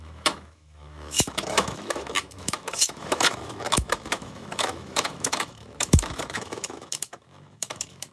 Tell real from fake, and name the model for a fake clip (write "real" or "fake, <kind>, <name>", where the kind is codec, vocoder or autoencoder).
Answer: fake, autoencoder, DAC-VAE